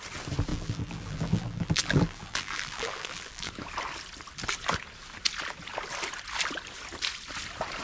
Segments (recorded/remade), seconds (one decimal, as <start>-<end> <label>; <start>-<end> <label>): 0.0-0.5 recorded; 0.5-3.5 remade; 3.5-7.8 recorded